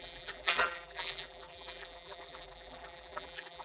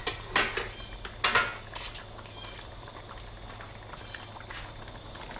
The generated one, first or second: first